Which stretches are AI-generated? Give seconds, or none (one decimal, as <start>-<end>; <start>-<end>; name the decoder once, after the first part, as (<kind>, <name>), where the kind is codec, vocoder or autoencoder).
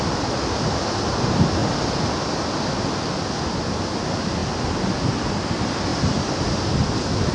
none